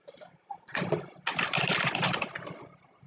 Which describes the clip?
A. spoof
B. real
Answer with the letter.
B